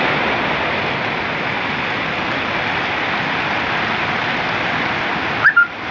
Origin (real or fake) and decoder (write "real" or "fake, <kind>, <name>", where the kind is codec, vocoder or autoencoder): real